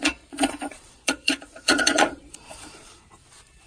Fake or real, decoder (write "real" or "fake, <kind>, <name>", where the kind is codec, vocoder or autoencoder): fake, vocoder, Vocos